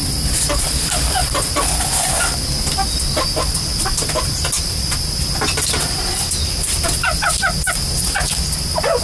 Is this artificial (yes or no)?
no